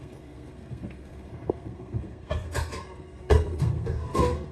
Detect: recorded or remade remade